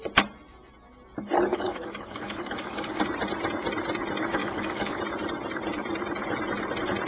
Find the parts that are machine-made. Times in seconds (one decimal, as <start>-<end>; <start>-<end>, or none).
1.5-3.0; 4.4-5.0